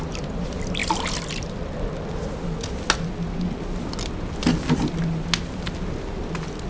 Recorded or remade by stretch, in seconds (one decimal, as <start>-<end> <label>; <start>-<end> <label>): 0.0-6.7 recorded